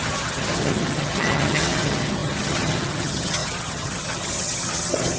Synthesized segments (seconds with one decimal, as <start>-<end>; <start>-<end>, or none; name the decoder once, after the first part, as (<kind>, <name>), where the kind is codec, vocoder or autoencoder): 0.0-5.2 (vocoder, HiFi-GAN)